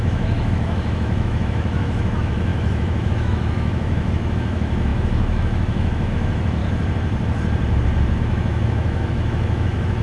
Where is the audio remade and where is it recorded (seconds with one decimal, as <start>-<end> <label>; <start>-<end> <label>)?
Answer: 0.0-6.6 remade; 6.6-8.2 recorded; 8.2-10.0 remade